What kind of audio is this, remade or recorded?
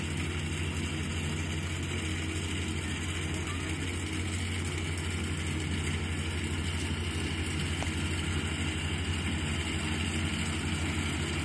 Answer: recorded